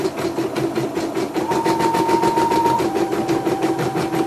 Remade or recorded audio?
recorded